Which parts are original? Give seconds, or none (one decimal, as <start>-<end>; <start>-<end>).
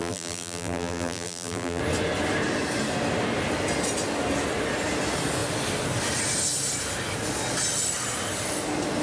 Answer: 1.8-9.0